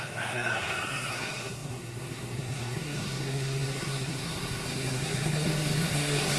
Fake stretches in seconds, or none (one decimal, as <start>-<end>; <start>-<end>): 0.0-6.4